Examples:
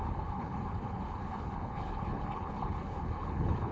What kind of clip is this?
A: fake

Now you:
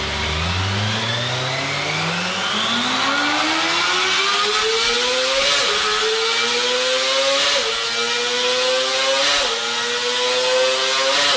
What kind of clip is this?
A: real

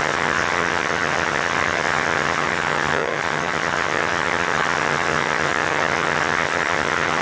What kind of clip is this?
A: fake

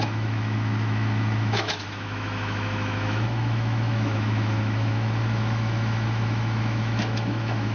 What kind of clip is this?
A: fake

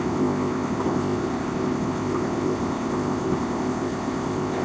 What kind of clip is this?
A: fake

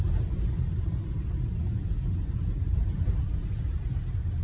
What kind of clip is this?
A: fake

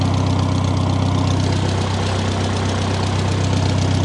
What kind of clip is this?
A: real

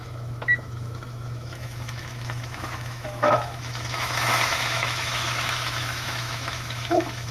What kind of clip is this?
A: fake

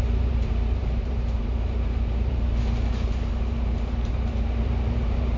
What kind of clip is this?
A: fake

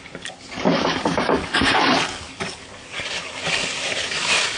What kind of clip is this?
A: fake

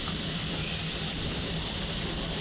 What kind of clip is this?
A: real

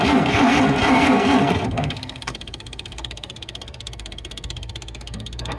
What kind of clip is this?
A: fake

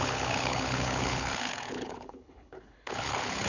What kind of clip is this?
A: fake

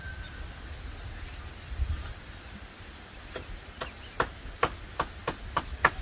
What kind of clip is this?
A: real